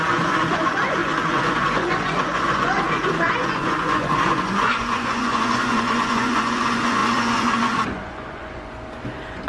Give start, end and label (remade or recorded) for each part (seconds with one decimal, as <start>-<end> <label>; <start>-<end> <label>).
0.0-9.5 remade